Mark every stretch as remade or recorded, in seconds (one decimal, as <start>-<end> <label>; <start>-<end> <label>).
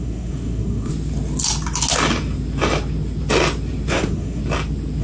0.0-0.9 remade; 0.9-3.9 recorded; 3.9-4.4 remade; 4.4-5.0 recorded